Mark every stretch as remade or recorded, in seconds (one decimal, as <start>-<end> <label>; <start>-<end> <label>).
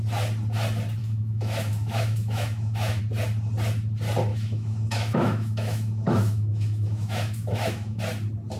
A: 0.0-1.0 recorded; 1.0-3.0 remade; 3.0-4.3 recorded; 4.3-8.0 remade; 8.0-8.6 recorded